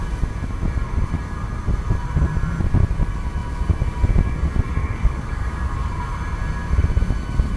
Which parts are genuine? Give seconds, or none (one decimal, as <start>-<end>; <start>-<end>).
0.0-4.8; 6.0-7.6